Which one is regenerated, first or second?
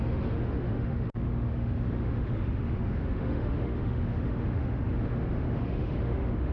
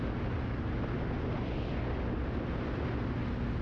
first